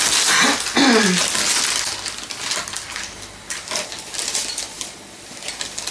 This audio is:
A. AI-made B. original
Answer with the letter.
B